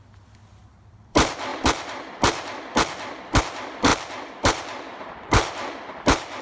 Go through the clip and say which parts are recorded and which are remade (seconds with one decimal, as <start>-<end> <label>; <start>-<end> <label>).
0.0-6.4 remade